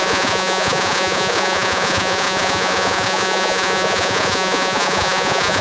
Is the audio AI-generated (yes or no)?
yes